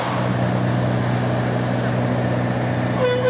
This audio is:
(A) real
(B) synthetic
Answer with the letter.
A